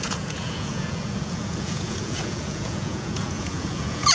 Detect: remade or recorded remade